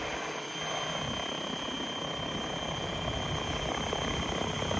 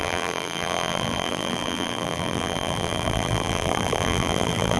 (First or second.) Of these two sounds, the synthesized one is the second